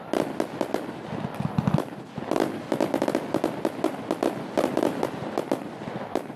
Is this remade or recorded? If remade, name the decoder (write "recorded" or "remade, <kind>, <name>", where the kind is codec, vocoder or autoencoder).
recorded